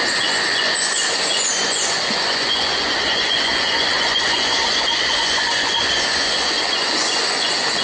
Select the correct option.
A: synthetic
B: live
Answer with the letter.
A